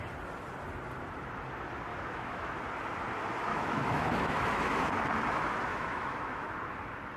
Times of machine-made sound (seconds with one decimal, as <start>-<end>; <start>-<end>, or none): 1.9-2.6; 3.5-4.9; 5.7-6.5